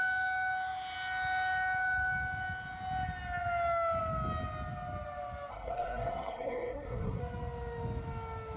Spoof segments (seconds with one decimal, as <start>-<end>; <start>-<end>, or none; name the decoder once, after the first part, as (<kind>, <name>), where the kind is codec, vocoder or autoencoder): 5.5-7.2 (codec, SNAC)